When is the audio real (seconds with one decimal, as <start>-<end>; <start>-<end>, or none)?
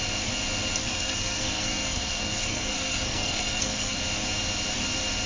0.0-0.8; 4.0-5.3